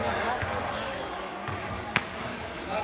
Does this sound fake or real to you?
fake